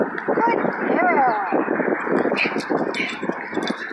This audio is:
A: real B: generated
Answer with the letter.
A